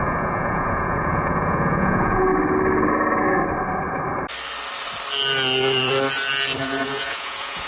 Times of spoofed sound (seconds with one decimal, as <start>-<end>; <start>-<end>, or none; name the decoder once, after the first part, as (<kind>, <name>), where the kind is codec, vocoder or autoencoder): 0.0-2.3 (vocoder, Vocos); 6.6-7.7